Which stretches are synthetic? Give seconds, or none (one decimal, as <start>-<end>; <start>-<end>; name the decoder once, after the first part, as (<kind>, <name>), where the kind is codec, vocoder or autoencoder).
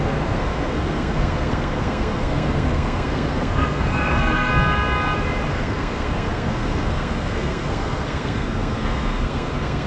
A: 0.0-4.5 (codec, SNAC); 5.5-9.9